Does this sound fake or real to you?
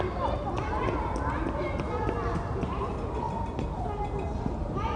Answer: real